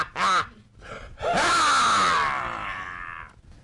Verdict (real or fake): real